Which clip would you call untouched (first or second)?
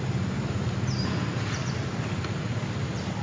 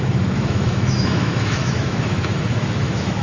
first